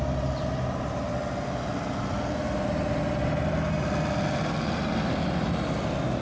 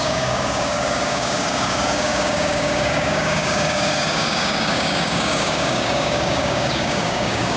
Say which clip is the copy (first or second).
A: second